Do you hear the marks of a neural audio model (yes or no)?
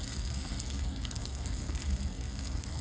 yes